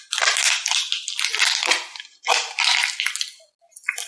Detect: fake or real real